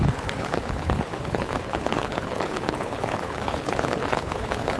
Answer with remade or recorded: remade